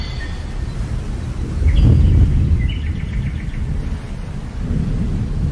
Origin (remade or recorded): recorded